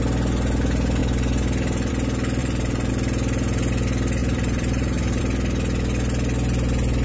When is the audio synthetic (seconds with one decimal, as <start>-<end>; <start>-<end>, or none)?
2.4-2.9; 4.2-5.2